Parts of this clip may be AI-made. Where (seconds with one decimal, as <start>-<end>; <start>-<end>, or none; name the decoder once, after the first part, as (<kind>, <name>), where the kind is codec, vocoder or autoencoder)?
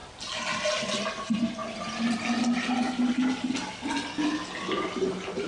none